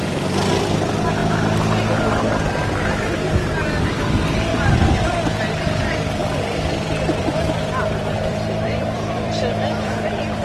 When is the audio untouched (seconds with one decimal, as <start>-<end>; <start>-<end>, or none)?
0.0-6.2

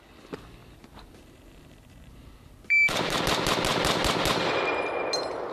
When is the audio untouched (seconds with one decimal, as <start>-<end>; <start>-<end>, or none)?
0.0-0.6; 3.2-5.5

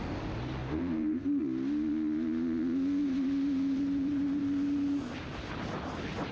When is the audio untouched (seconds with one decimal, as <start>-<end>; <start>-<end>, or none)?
0.0-0.6; 1.4-3.0; 4.4-6.3

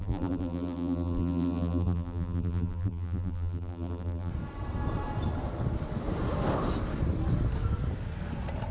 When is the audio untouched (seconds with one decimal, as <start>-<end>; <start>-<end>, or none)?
4.3-8.7

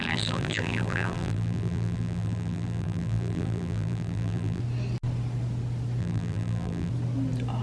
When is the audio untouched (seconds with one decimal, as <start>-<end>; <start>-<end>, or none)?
4.6-6.0; 6.9-7.6

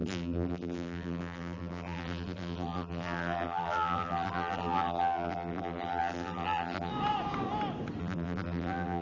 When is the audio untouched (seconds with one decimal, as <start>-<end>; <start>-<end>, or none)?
6.9-8.0

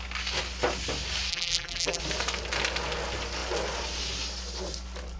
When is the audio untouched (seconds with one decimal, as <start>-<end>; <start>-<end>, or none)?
0.0-1.3; 2.0-5.2